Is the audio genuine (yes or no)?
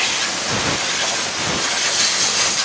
yes